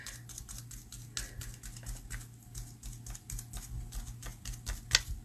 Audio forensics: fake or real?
real